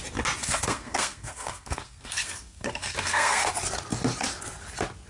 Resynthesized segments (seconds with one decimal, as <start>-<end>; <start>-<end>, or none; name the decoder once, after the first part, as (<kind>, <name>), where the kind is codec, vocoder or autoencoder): 0.4-3.5 (codec, SNAC)